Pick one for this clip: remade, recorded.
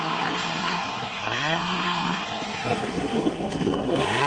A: remade